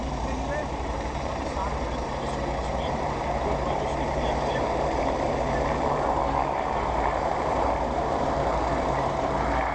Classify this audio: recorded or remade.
remade